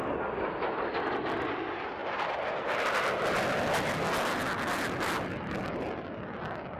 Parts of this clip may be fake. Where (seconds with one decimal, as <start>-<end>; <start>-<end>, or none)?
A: none